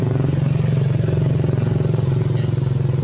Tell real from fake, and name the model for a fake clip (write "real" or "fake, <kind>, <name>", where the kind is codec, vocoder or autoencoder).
real